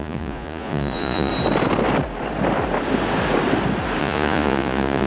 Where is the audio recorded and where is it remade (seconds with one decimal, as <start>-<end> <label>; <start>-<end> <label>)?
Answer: 0.0-1.3 remade; 1.3-4.0 recorded; 4.0-5.1 remade

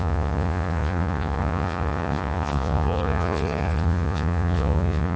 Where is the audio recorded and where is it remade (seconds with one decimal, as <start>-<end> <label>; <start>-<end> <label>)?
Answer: 0.0-5.2 remade